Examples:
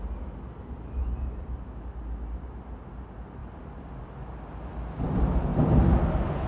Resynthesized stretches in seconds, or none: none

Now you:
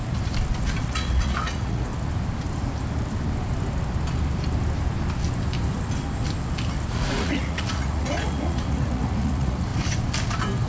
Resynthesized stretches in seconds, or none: 0.6-1.9; 6.9-9.7

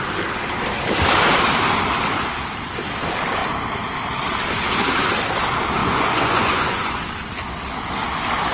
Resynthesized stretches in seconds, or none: 5.8-7.0

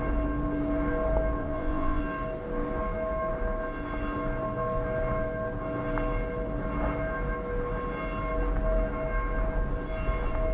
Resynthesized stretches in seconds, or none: 1.4-2.0

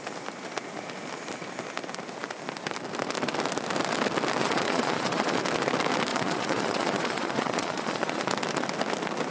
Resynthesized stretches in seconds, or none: 4.4-5.4; 6.1-8.3

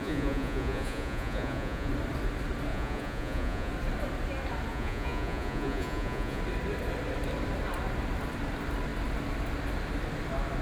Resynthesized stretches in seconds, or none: 0.0-1.9; 2.7-3.7; 4.7-6.4